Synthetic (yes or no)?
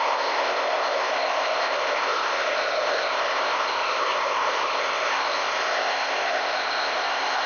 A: yes